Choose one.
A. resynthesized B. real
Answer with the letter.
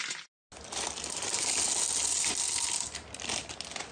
B